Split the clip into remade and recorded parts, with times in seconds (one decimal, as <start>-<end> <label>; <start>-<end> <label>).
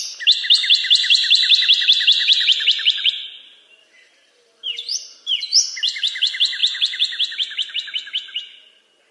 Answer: 0.0-2.2 recorded; 2.2-3.1 remade; 3.1-6.6 recorded; 6.6-7.7 remade; 7.7-9.1 recorded